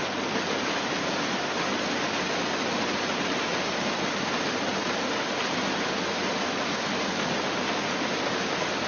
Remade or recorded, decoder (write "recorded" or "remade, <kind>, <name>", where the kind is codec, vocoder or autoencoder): recorded